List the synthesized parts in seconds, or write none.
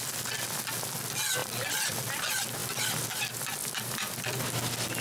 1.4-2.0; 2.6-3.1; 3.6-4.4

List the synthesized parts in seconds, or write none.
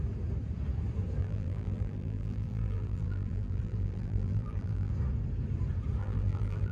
1.2-4.9; 6.0-6.7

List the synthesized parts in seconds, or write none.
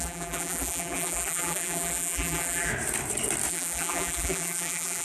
0.0-2.7; 3.5-5.0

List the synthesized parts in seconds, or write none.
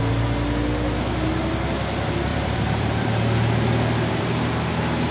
2.3-4.5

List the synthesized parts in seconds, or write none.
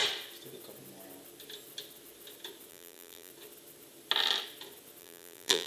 2.7-3.3; 5.0-5.7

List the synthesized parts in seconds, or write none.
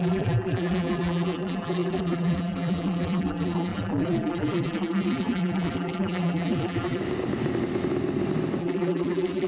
0.0-7.0; 8.6-9.5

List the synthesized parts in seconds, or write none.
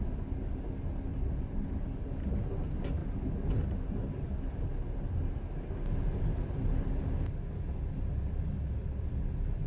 1.1-1.7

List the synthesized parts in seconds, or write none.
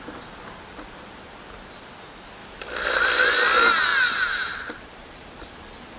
2.4-3.2